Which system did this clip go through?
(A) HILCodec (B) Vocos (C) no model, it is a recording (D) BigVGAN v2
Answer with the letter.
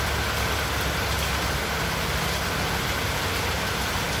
C